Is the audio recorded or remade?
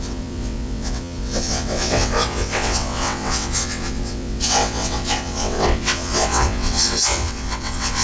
remade